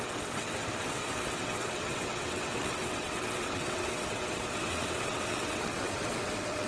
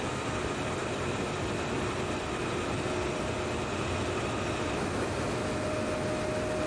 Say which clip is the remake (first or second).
first